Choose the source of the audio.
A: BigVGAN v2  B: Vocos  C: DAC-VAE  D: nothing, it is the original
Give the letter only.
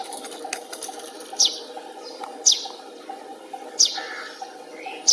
D